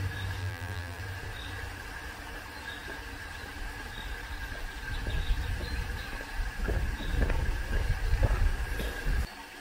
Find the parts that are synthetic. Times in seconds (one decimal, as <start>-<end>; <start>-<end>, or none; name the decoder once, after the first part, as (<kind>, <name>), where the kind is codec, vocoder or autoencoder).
0.4-1.0 (vocoder, BigVGAN v2)